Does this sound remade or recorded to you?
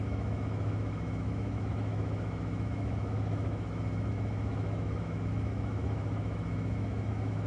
remade